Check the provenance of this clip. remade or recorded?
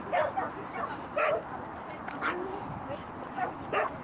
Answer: recorded